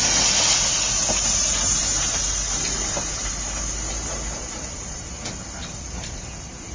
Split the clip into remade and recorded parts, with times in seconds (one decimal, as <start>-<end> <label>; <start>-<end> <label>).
0.0-6.7 recorded